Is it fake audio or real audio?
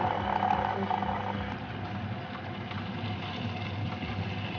real